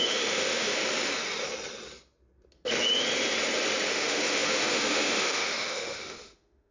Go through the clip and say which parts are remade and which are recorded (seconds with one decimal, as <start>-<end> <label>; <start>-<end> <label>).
0.0-0.8 remade; 0.8-3.9 recorded; 3.9-6.7 remade